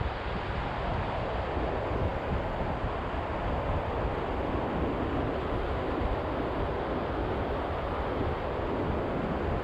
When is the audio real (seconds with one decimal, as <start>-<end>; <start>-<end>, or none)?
0.0-9.6